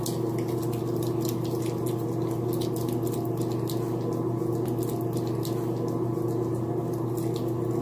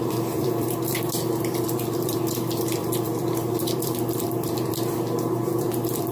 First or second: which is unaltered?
first